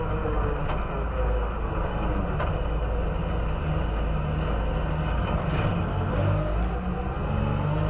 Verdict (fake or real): real